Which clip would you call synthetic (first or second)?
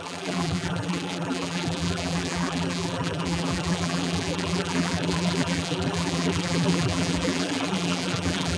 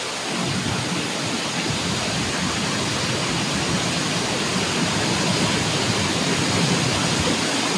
first